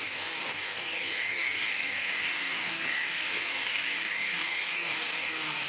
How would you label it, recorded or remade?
remade